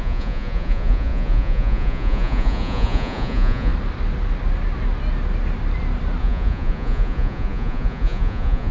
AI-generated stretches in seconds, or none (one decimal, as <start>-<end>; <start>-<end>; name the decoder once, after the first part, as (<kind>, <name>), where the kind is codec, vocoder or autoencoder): 0.0-3.7 (vocoder, Vocos); 6.2-8.7